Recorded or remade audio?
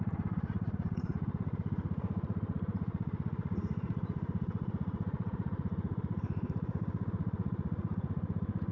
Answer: remade